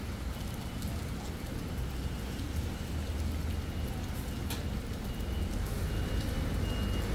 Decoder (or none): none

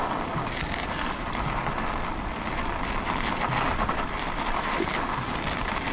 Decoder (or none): none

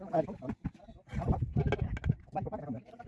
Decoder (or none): none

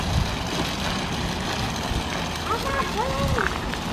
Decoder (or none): none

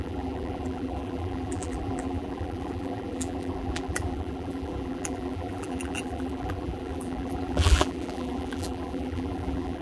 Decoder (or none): vocoder, BigVGAN v2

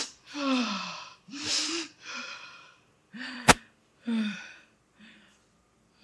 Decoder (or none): vocoder, BigVGAN v2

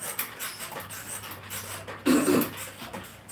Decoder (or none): none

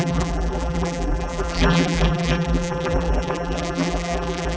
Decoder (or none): vocoder, BigVGAN v2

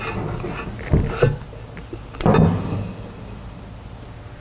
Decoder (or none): none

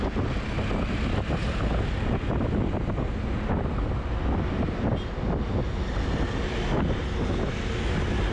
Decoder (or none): none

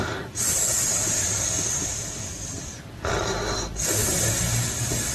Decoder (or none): none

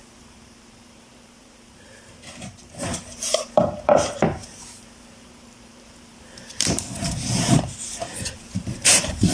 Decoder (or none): vocoder, BigVGAN v2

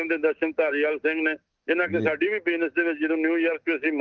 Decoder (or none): none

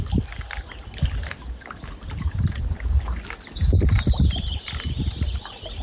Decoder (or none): vocoder, BigVGAN v2